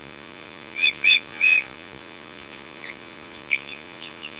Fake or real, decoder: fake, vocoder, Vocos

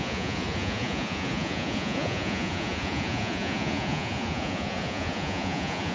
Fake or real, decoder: fake, vocoder, Vocos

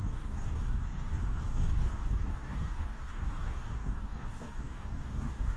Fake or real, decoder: fake, codec, DAC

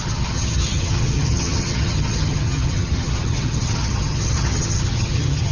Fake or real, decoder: fake, vocoder, HiFi-GAN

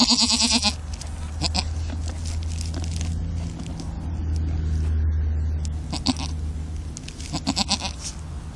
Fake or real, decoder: real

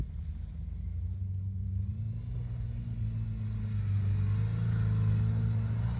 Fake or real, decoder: real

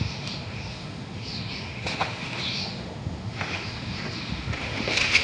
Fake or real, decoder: fake, autoencoder, DAC-VAE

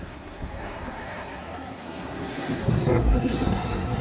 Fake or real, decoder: fake, codec, SNAC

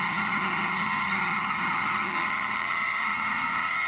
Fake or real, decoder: fake, vocoder, HiFi-GAN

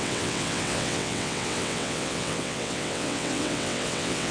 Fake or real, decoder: fake, vocoder, WaveNeXt